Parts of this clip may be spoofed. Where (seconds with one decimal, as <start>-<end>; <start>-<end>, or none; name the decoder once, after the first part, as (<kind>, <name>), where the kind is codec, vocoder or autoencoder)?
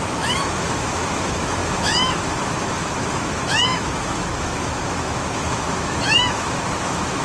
0.0-7.2 (autoencoder, DAC-VAE)